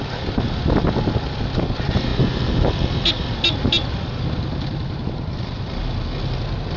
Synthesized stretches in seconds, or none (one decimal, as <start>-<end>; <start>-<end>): none